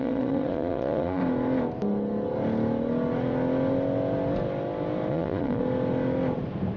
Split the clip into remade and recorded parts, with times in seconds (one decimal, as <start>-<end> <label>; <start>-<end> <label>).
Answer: 0.0-1.2 remade; 1.2-5.1 recorded; 5.1-5.6 remade; 5.6-6.8 recorded